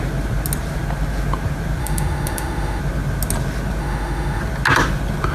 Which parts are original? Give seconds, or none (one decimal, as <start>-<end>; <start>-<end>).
0.0-1.8; 2.8-3.8; 4.4-5.3